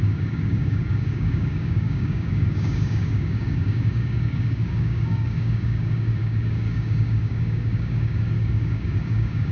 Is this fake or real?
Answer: fake